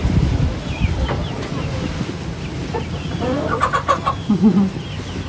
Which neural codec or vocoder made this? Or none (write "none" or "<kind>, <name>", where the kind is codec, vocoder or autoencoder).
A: none